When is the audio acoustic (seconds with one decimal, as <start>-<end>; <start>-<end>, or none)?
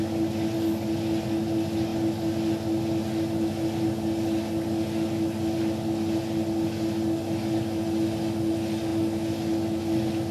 0.0-10.3